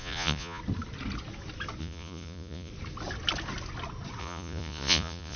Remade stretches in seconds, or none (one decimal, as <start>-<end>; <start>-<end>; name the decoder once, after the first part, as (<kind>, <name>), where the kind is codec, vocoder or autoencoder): 0.0-0.6 (vocoder, Vocos); 1.8-2.7; 4.2-5.4